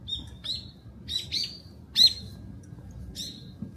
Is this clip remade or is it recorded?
recorded